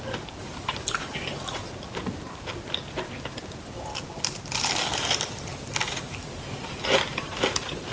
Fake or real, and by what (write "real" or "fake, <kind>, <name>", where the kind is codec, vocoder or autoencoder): fake, vocoder, BigVGAN v2